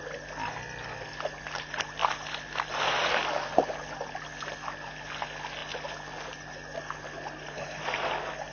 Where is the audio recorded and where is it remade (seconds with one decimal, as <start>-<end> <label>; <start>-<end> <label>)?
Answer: 0.0-8.5 recorded